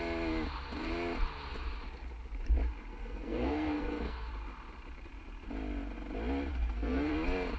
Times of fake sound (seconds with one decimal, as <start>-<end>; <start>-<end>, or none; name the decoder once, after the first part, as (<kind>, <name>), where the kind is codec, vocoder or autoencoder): 2.9-4.3 (codec, SNAC); 6.5-7.1